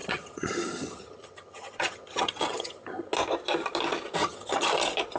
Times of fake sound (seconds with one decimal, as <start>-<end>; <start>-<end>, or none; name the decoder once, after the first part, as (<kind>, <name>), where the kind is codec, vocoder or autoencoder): 0.0-3.1 (vocoder, HiFi-GAN); 4.2-4.7